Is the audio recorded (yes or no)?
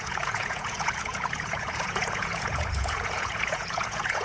no